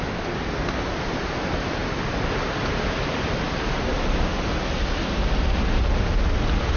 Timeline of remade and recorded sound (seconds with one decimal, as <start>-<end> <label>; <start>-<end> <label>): 0.0-6.8 recorded